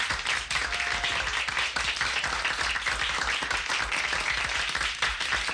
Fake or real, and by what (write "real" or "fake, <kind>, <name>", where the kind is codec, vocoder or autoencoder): real